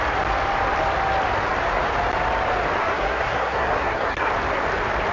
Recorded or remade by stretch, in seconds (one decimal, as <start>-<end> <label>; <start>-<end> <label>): 0.0-2.8 recorded; 2.8-4.3 remade; 4.3-5.1 recorded